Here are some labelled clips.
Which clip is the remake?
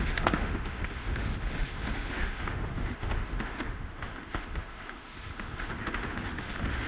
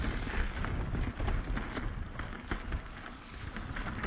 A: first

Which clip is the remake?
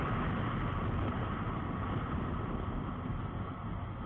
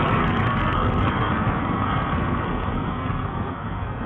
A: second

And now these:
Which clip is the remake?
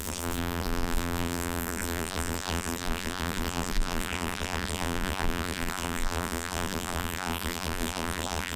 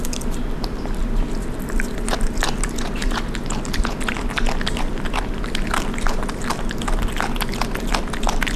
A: first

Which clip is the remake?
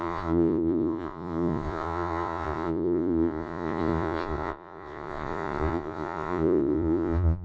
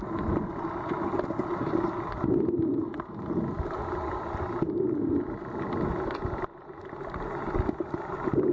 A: first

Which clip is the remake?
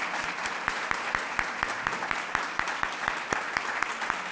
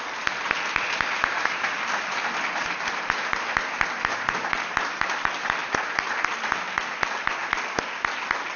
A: first